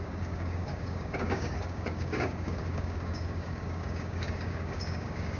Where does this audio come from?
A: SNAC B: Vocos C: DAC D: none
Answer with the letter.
C